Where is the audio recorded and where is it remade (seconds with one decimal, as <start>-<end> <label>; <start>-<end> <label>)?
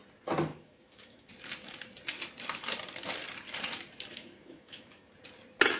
0.0-0.5 recorded; 0.5-1.3 remade; 1.3-4.1 recorded; 4.1-5.1 remade; 5.1-5.8 recorded